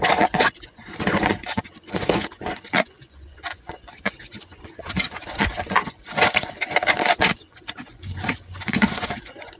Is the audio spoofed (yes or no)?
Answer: yes